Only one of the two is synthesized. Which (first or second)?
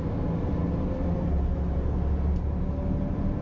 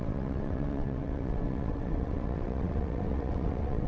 second